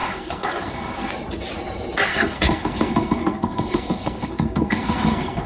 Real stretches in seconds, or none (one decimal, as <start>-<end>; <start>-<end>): 1.1-2.1